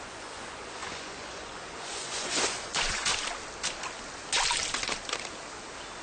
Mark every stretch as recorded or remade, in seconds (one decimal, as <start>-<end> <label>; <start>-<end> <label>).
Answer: 0.0-3.1 remade; 3.1-6.0 recorded